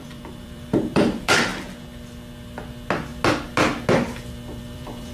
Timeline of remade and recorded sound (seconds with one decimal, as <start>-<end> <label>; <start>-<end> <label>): 0.0-1.5 remade; 1.5-4.6 recorded; 4.6-5.1 remade